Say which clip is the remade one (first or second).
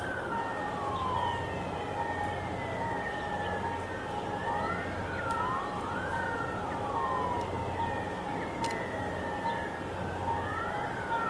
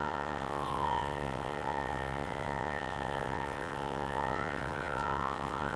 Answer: second